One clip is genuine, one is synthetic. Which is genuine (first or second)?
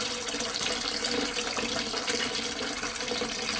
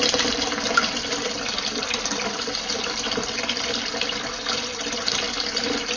first